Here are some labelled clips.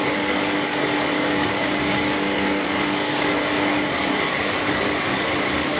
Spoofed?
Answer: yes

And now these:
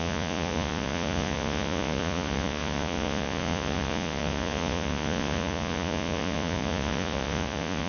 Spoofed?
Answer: yes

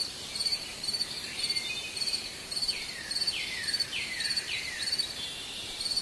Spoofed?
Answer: yes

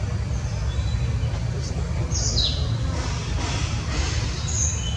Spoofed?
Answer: no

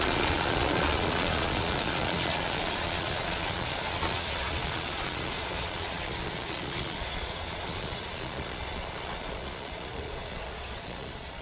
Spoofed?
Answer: yes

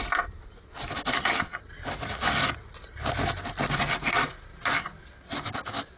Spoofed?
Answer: no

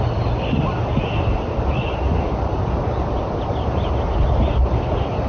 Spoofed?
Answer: no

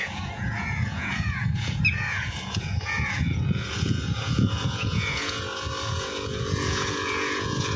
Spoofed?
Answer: yes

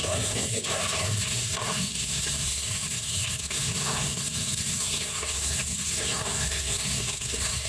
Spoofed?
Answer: yes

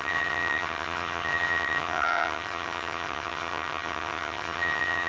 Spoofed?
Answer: yes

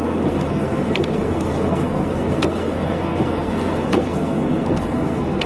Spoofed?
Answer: yes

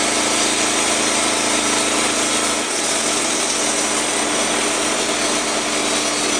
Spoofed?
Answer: no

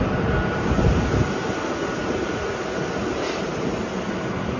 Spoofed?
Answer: no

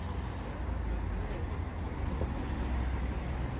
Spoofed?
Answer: no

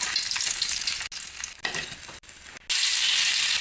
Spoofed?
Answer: no